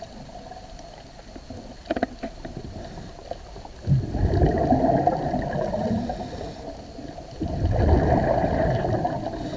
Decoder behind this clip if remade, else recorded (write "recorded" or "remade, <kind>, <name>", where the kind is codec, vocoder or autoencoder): recorded